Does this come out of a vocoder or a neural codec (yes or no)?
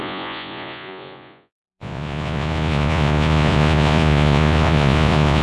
yes